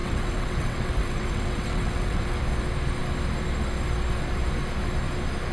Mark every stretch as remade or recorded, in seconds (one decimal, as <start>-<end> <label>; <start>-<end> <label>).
0.0-2.4 remade; 2.4-5.5 recorded